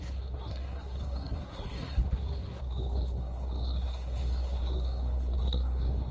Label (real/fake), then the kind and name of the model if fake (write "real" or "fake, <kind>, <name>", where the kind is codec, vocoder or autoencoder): fake, codec, SNAC